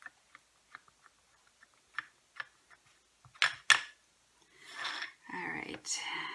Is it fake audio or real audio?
real